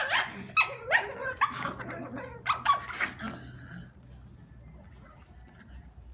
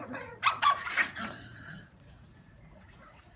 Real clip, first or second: first